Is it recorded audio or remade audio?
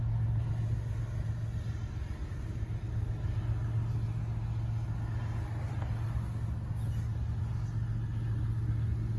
recorded